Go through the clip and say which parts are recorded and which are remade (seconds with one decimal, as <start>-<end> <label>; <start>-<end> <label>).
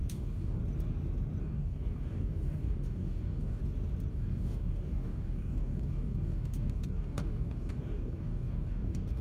0.0-0.6 remade; 0.6-1.4 recorded; 1.4-3.6 remade; 3.6-4.1 recorded; 4.1-9.2 remade